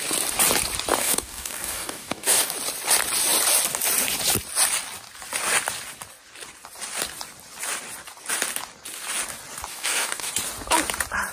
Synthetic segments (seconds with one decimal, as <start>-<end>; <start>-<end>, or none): 1.0-2.5; 9.7-10.3